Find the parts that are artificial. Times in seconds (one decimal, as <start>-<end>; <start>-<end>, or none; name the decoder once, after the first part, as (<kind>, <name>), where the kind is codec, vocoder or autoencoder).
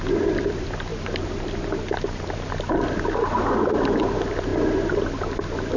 none